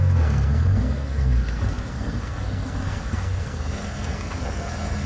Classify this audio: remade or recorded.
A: remade